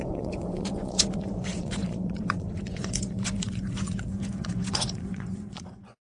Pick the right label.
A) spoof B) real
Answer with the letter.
A